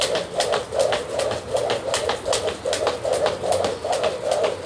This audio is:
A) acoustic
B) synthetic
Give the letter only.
A